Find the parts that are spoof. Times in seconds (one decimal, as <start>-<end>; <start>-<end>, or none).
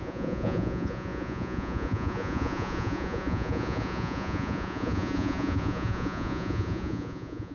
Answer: 0.0-7.5